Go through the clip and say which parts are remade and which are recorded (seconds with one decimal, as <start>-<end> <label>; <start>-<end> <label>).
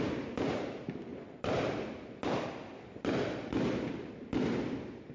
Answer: 0.0-5.1 remade